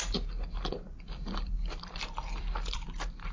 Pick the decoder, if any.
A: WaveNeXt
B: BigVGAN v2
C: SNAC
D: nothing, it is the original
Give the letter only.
B